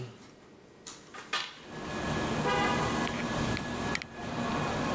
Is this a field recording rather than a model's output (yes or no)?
yes